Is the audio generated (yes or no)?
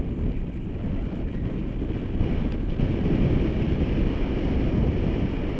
no